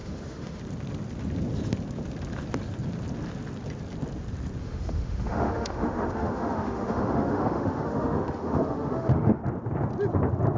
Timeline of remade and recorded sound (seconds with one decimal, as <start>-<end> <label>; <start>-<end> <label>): 0.0-0.6 remade; 0.6-4.6 recorded; 4.6-9.4 remade; 9.4-10.6 recorded